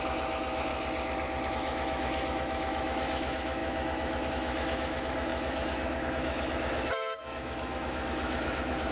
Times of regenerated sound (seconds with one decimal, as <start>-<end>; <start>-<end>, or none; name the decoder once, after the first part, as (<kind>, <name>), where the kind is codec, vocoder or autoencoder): 0.0-0.7 (autoencoder, DAC-VAE); 1.5-8.9